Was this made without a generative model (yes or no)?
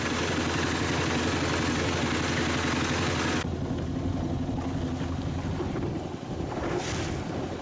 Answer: yes